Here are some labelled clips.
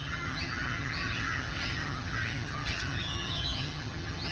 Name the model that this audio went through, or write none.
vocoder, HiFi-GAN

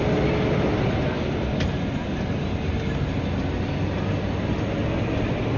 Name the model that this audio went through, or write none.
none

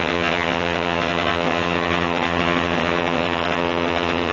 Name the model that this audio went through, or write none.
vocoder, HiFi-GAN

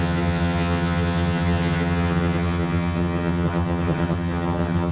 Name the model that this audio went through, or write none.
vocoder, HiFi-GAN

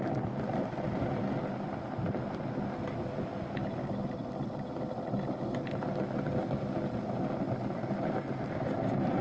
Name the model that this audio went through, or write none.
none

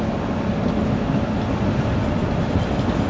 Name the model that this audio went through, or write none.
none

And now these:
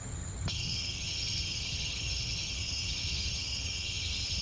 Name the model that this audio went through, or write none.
vocoder, HiFi-GAN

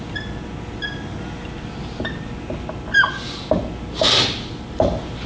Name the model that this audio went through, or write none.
none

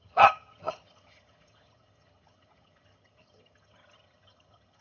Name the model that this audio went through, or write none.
vocoder, HiFi-GAN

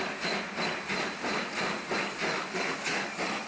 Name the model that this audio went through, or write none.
none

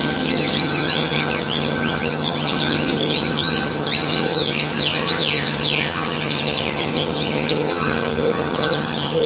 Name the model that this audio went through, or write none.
vocoder, HiFi-GAN